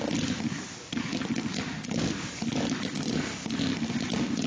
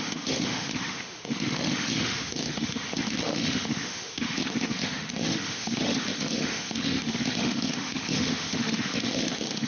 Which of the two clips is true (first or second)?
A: first